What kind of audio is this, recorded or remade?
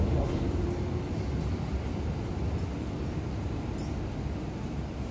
recorded